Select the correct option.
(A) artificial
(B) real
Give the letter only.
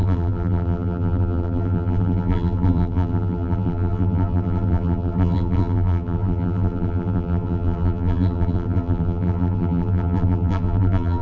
A